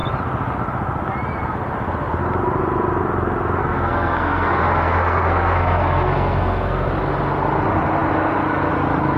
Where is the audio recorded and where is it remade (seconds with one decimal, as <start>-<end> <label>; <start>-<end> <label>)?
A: 0.0-3.6 recorded; 3.6-6.9 remade; 6.9-9.2 recorded